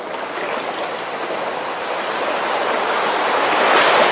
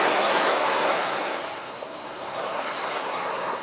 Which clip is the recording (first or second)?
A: first